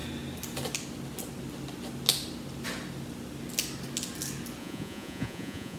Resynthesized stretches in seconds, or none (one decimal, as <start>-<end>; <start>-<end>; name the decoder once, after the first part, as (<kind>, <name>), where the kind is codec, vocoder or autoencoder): 4.6-5.8 (vocoder, Vocos)

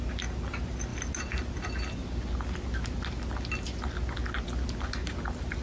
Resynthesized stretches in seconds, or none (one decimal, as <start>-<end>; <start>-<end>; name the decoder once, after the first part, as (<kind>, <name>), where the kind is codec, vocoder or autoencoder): none

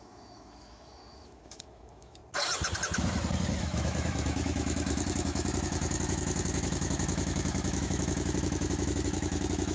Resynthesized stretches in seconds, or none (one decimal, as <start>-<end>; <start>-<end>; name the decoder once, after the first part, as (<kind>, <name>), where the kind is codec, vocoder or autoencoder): 0.0-2.2 (autoencoder, DAC-VAE); 3.6-9.7

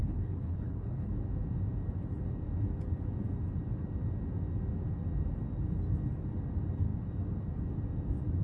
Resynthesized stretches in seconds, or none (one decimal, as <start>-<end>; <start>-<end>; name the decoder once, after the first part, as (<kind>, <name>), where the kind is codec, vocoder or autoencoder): 0.0-1.1 (codec, HILCodec)

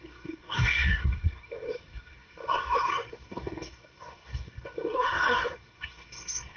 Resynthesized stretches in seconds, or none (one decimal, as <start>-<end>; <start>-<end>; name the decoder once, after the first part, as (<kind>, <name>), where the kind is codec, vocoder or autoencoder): 0.0-6.6 (codec, SNAC)

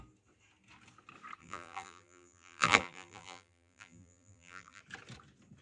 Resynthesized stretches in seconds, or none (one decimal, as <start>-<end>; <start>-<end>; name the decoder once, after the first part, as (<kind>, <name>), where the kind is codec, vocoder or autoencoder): 1.4-4.8 (vocoder, BigVGAN v2)